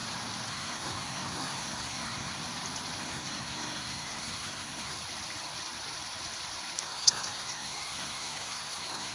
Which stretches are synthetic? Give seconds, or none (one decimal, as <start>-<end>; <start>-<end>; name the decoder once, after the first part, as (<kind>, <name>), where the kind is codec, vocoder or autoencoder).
0.5-2.4 (codec, SNAC); 3.0-5.0; 6.8-9.1